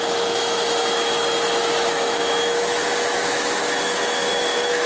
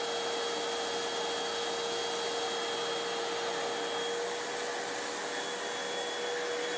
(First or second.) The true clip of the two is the second